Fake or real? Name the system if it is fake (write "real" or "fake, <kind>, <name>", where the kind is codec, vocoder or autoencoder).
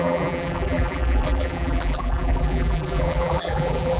fake, vocoder, BigVGAN v2